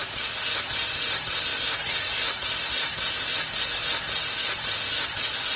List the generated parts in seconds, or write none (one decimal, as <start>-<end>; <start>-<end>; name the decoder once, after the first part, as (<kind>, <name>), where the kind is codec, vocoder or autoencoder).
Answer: none